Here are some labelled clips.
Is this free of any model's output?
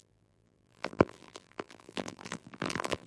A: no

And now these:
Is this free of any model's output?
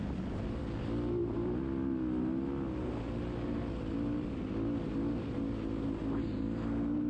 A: yes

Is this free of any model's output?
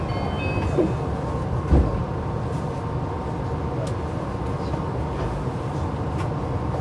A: yes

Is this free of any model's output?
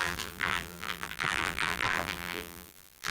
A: no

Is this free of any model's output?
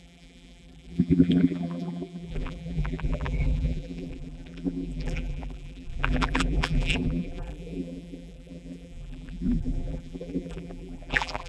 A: no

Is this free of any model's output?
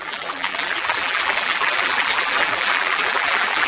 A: no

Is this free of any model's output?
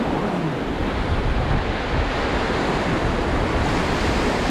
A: yes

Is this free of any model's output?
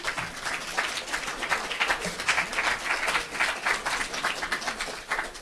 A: yes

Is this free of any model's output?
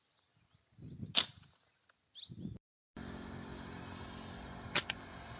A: yes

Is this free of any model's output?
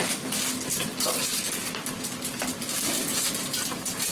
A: yes